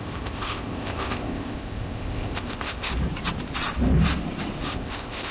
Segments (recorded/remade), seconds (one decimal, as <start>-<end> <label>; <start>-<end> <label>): 0.0-2.9 remade; 2.9-4.7 recorded; 4.7-5.3 remade